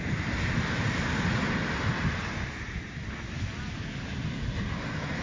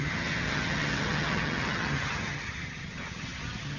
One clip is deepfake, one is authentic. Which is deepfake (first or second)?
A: second